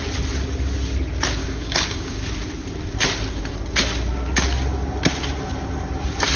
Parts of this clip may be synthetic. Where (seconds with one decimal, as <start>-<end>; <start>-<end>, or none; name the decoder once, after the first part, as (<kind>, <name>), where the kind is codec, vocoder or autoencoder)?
1.4-2.2 (codec, DAC)